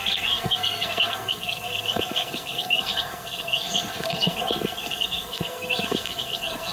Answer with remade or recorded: remade